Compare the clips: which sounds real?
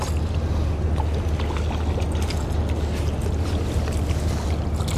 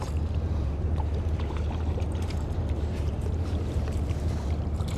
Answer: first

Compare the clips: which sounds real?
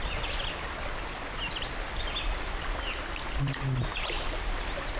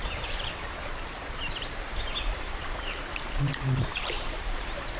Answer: first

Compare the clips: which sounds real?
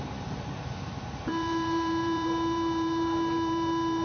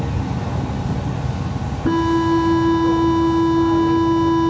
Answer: second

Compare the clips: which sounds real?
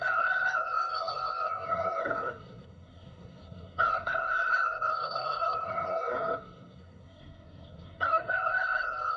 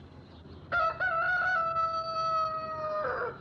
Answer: second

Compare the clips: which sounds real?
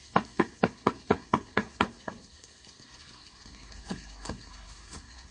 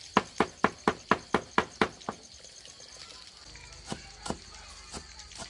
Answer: second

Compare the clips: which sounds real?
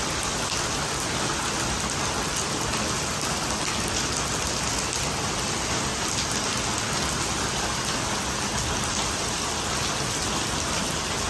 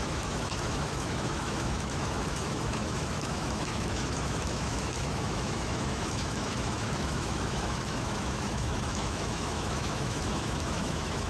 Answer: first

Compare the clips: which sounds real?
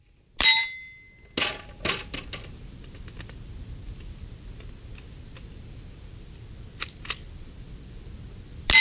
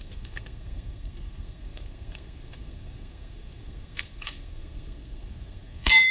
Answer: first